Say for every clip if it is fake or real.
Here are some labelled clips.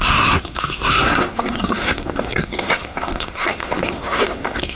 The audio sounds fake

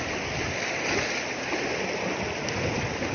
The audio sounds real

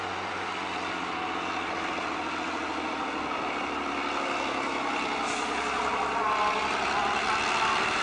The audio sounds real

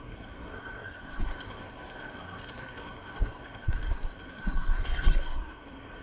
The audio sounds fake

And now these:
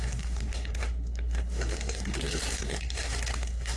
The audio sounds fake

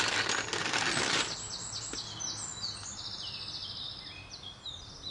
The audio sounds real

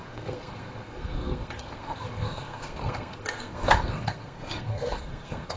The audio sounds fake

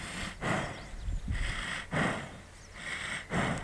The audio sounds real